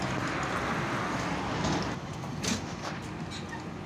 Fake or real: real